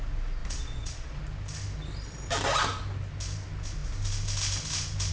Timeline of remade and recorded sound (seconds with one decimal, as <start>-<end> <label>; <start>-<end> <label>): 0.0-0.4 recorded; 0.4-1.2 remade; 1.2-5.1 recorded